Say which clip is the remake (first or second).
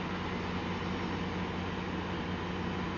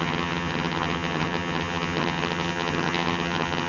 second